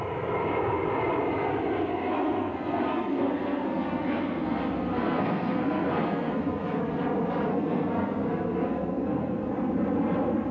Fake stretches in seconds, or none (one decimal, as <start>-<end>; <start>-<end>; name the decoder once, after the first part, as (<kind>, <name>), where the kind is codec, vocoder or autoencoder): 1.9-6.8 (codec, SNAC); 7.5-9.5